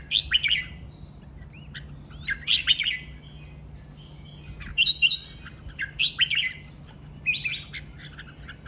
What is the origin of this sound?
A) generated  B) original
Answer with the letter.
B